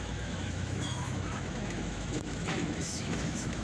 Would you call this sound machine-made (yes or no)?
yes